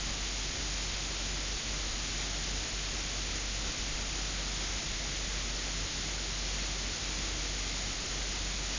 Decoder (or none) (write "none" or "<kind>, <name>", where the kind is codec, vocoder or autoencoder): none